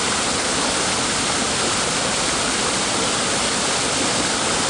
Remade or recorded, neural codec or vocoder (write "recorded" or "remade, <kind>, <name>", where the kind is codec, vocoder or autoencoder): recorded